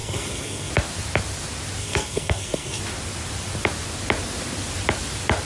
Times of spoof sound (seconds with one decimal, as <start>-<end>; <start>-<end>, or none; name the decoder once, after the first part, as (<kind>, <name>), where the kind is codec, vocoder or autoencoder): 0.0-0.7 (codec, SNAC); 1.8-2.8